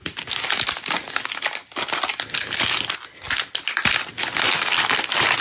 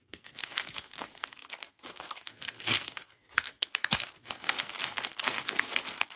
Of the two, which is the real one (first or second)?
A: first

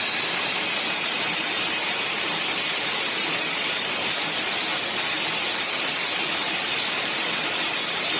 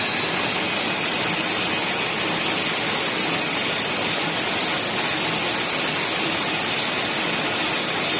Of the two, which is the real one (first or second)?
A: second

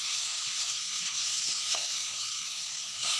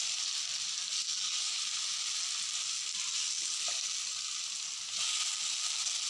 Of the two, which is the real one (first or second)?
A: second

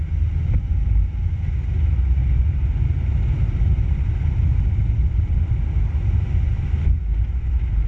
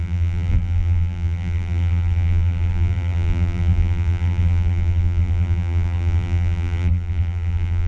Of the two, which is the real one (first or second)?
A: first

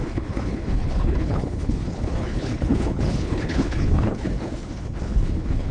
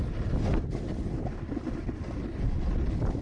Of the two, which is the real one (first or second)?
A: second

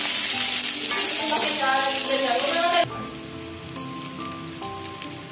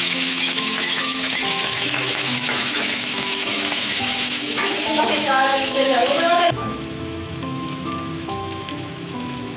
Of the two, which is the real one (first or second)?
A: first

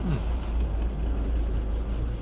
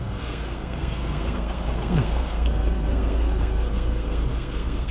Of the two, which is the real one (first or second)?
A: first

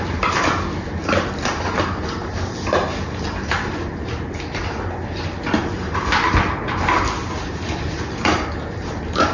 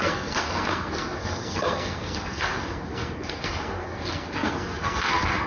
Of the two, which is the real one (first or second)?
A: first